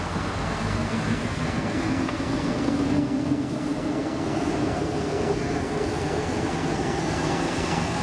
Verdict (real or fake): fake